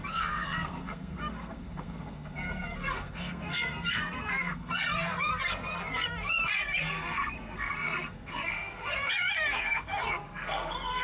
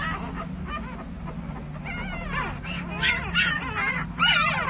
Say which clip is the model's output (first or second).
first